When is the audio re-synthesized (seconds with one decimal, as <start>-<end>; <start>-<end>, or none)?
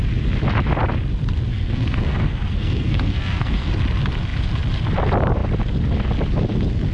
1.5-3.7